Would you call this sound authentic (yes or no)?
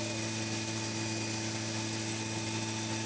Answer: yes